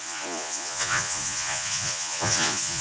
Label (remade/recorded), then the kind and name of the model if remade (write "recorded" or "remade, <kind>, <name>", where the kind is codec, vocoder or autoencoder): remade, vocoder, Vocos